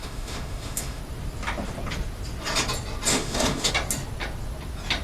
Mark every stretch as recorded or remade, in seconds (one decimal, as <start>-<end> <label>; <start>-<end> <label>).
0.0-1.0 remade; 1.0-3.1 recorded; 3.1-3.7 remade; 3.7-5.0 recorded